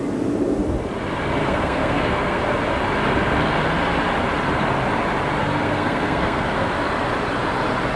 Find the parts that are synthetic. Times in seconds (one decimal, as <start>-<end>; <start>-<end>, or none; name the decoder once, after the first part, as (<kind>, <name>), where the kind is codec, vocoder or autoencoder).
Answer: 1.4-2.4 (codec, SNAC); 5.4-6.7